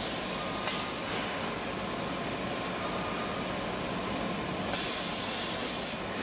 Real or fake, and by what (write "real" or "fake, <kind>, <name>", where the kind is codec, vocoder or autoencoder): real